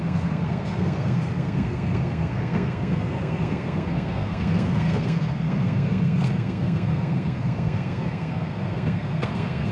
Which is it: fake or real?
fake